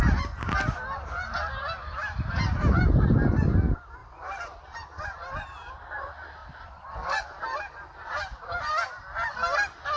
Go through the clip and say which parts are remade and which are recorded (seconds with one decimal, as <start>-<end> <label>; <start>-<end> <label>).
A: 0.0-10.0 recorded